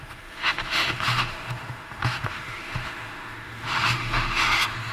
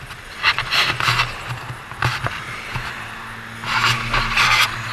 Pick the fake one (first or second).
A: first